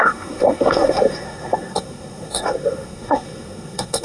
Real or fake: fake